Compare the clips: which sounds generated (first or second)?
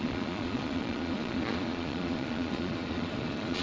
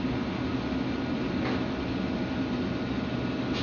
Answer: first